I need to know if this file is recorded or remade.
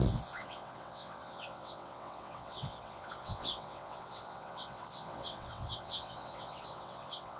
remade